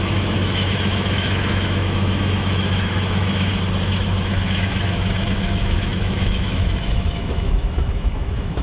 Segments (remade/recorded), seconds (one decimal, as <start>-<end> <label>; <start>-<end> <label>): 0.0-3.5 remade; 3.5-4.2 recorded; 4.2-8.6 remade